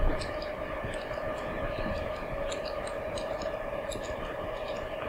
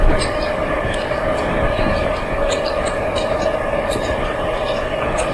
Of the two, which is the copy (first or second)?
second